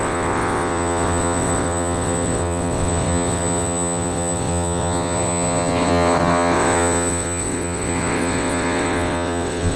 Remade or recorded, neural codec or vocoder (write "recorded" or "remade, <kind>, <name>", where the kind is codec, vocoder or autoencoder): remade, vocoder, WaveNeXt